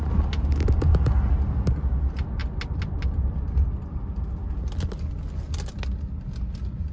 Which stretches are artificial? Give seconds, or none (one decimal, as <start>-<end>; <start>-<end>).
none